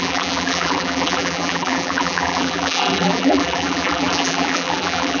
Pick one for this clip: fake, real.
fake